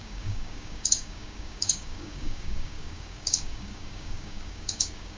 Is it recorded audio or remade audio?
remade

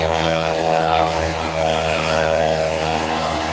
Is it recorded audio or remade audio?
remade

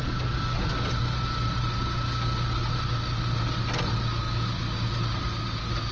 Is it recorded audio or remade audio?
recorded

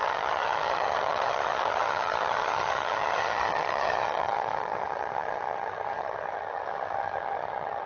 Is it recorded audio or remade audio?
remade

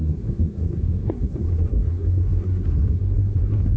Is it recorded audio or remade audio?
remade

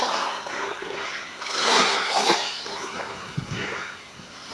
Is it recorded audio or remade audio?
remade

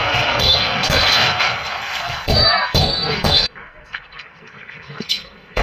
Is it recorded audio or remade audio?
remade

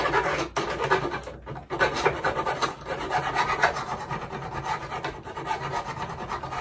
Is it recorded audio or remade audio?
recorded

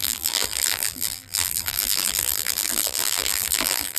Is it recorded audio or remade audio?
remade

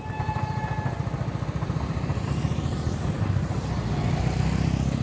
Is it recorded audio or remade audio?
recorded